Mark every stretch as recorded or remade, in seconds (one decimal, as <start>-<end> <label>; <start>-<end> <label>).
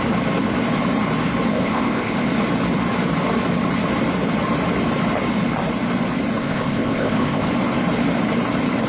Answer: 0.0-1.5 recorded; 1.5-2.3 remade; 2.3-6.4 recorded; 6.4-7.5 remade; 7.5-8.9 recorded